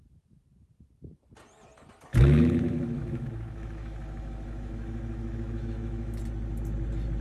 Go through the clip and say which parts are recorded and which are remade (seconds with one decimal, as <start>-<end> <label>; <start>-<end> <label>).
0.0-2.1 recorded; 2.1-6.2 remade; 6.2-7.2 recorded